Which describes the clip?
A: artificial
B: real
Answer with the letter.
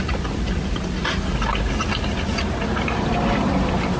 B